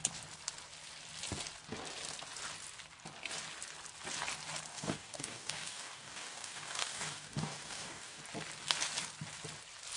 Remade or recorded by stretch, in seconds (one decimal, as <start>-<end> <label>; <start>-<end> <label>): 0.0-4.7 recorded; 4.7-8.2 remade; 8.2-10.0 recorded